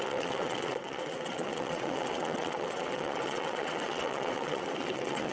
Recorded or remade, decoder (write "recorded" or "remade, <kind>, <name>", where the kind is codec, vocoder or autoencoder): remade, vocoder, WaveNeXt